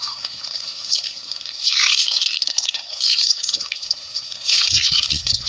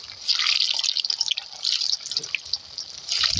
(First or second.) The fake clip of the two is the first